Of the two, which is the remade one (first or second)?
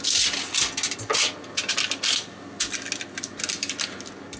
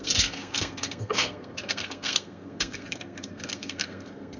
second